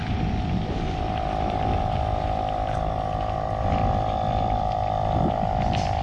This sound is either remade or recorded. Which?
remade